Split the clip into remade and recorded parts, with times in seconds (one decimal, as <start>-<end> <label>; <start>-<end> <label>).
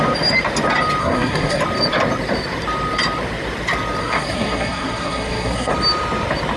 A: 0.0-1.0 recorded; 1.0-1.6 remade; 1.6-4.0 recorded; 4.0-5.7 remade; 5.7-6.6 recorded